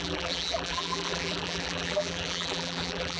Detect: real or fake fake